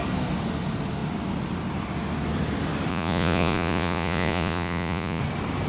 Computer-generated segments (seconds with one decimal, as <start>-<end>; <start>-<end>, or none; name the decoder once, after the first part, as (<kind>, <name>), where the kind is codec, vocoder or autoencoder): 2.9-5.2 (vocoder, Vocos)